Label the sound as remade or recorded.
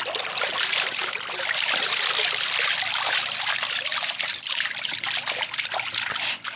recorded